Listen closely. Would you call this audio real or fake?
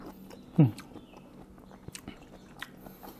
real